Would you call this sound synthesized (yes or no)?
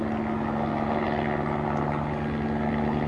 no